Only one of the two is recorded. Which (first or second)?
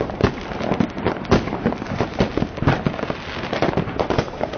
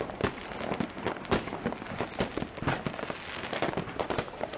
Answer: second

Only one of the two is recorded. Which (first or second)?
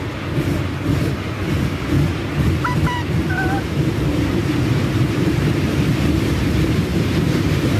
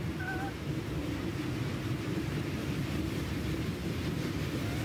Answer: second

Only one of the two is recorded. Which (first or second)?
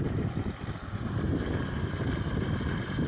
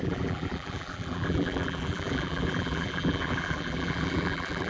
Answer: first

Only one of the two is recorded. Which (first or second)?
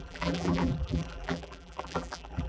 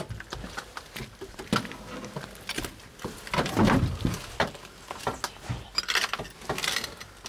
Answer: second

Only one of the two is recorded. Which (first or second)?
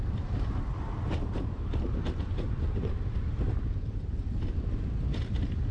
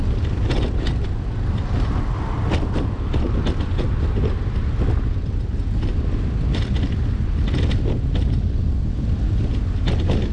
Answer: second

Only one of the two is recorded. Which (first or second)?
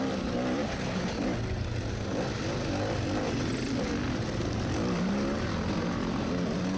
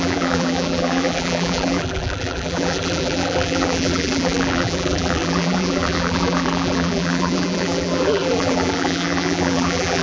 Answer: first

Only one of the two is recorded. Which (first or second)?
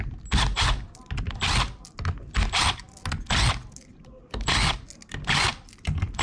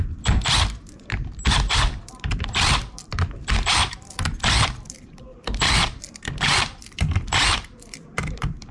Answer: first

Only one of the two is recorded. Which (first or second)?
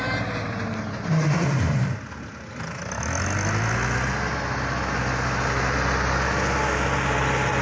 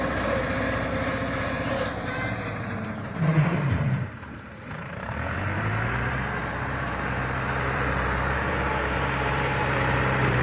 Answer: first